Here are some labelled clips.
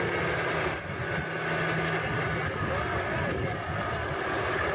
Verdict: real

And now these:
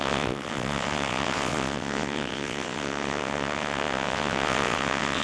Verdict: fake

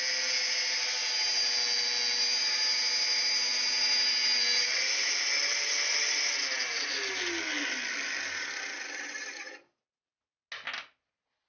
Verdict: real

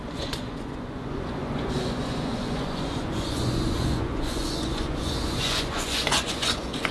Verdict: fake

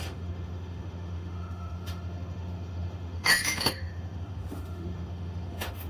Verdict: fake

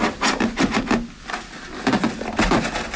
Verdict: real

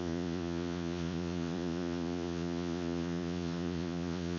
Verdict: fake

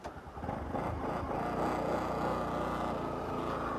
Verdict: real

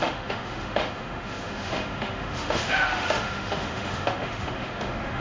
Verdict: fake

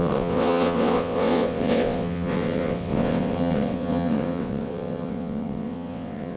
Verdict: fake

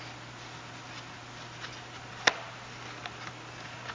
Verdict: real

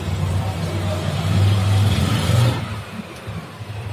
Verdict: fake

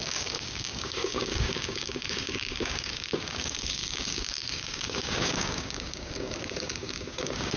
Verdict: fake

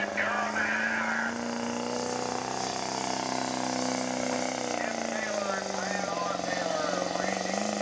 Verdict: real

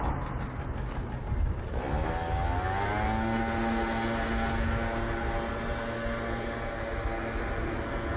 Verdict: real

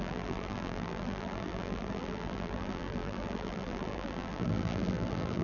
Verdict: fake